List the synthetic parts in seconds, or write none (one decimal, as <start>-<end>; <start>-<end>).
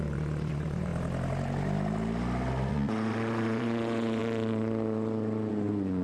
0.0-0.9; 2.7-4.2; 5.5-6.0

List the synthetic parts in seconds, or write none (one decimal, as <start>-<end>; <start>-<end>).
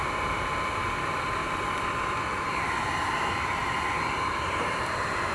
none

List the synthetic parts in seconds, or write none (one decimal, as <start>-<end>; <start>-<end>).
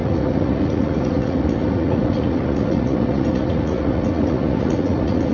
0.0-5.3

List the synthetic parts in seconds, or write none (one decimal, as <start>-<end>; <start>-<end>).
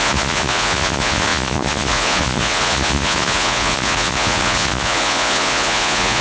0.0-6.2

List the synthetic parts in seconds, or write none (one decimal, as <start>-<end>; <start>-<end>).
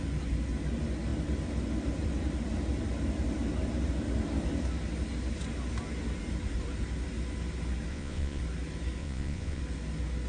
7.9-8.4; 9.0-9.6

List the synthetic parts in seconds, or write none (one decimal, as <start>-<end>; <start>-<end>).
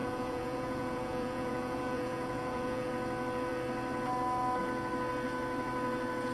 0.0-2.9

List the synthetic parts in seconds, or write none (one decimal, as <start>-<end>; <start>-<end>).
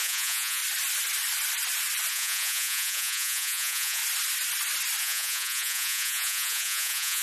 0.0-0.6; 2.1-4.0; 5.0-7.2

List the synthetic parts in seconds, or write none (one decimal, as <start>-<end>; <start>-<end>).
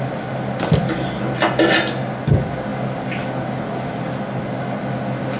none